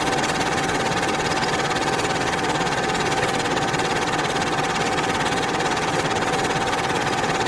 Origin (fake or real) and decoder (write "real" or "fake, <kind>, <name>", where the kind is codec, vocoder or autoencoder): fake, vocoder, WaveNeXt